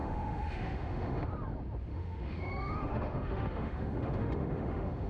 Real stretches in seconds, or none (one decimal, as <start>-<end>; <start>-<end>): 1.3-1.9